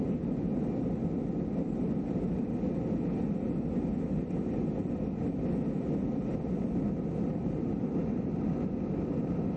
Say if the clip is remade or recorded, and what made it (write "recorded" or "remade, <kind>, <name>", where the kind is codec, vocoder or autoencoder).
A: recorded